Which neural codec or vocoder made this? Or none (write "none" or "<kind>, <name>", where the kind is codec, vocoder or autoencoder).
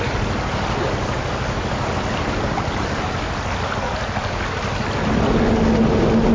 none